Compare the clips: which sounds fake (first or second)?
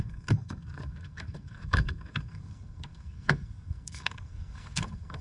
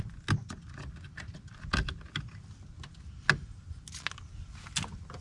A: first